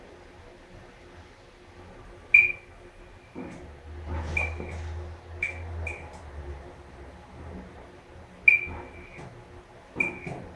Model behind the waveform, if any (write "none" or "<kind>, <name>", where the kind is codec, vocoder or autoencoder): none